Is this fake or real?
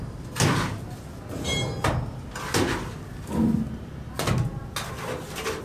real